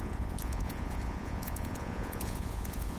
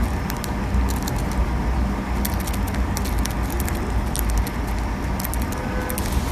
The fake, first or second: first